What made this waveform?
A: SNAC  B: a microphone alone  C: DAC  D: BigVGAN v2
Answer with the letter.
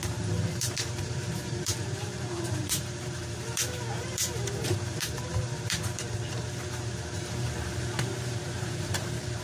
D